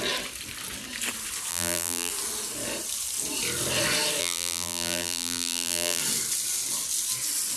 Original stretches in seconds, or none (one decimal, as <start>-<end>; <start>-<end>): 0.0-1.5; 2.1-4.2; 6.0-7.6